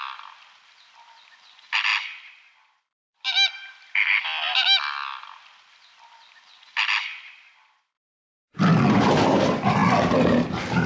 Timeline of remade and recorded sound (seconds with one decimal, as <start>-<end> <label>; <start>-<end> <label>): 0.0-10.9 recorded